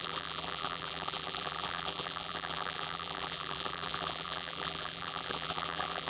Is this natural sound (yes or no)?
no